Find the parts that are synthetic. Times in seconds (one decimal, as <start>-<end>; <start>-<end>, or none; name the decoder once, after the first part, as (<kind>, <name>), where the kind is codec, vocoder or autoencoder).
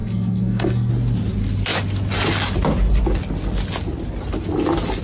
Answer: 0.0-0.9 (codec, SNAC)